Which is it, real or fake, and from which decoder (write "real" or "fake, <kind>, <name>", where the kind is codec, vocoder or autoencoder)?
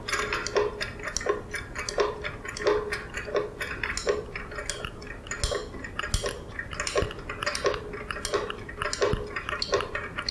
real